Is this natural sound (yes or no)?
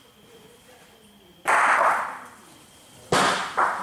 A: no